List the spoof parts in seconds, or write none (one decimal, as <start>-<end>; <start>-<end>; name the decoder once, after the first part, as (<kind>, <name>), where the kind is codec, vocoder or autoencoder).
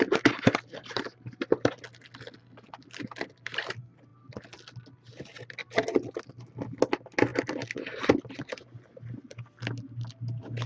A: none